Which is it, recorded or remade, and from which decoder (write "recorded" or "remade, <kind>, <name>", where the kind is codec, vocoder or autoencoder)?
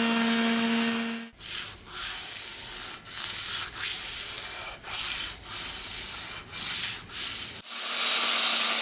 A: recorded